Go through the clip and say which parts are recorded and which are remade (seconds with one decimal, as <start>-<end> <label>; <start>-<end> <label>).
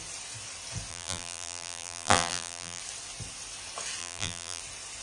0.0-0.9 recorded; 0.9-2.8 remade; 2.8-4.0 recorded; 4.0-4.6 remade; 4.6-5.0 recorded